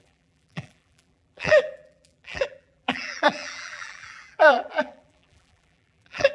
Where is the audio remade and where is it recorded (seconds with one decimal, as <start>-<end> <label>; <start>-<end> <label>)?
0.0-6.3 remade